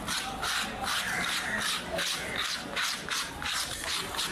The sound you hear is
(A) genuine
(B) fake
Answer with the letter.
A